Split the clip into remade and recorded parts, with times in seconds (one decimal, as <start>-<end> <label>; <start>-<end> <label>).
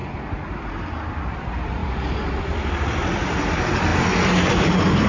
0.0-1.3 recorded; 1.3-1.8 remade; 1.8-2.4 recorded; 2.4-3.9 remade; 3.9-4.5 recorded; 4.5-5.1 remade